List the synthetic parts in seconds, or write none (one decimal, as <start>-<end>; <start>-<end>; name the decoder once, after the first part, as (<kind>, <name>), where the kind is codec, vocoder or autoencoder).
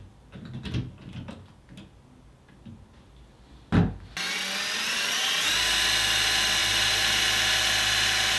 6.6-7.2 (vocoder, BigVGAN v2)